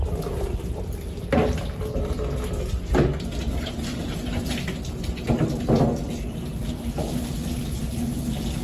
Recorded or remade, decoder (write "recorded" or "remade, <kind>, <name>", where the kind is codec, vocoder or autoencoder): recorded